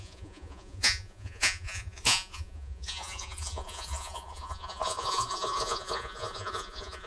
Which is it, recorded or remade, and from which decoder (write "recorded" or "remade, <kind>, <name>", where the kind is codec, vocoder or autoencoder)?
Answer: remade, vocoder, Vocos